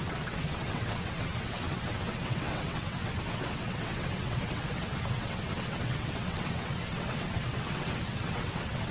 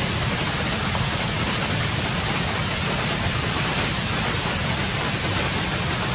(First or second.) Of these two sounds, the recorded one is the second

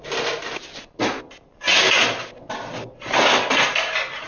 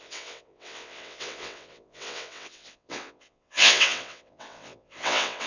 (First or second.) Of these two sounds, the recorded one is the first